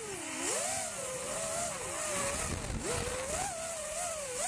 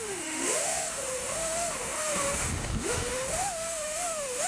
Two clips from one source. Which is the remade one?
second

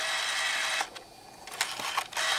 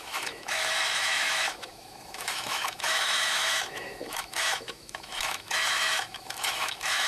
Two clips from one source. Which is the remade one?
second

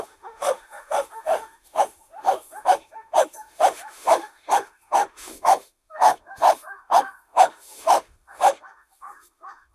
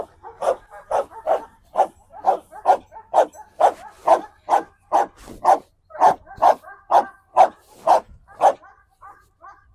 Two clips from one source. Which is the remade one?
first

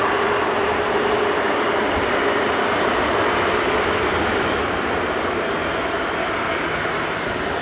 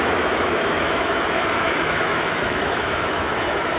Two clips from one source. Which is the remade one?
second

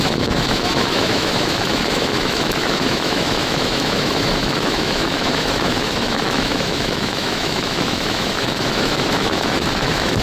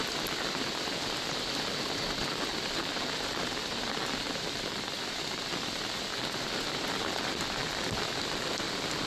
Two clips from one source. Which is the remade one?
first